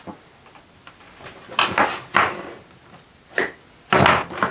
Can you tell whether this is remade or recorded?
recorded